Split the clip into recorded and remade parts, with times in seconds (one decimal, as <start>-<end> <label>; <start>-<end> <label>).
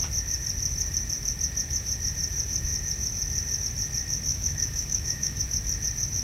0.0-4.3 recorded; 4.3-5.4 remade; 5.4-6.2 recorded